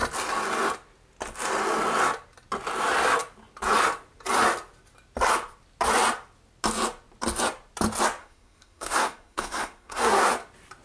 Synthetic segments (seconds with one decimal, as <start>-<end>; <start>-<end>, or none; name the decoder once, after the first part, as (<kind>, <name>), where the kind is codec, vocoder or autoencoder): 8.2-10.3 (codec, SNAC)